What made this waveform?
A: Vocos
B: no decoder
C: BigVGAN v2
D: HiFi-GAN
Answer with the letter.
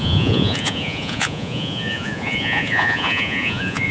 A